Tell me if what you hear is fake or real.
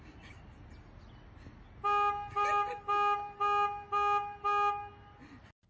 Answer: real